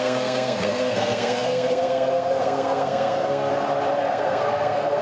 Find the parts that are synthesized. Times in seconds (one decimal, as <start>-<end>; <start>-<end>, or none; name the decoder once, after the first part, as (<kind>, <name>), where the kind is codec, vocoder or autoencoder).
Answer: 0.0-3.5 (codec, SNAC); 4.0-5.0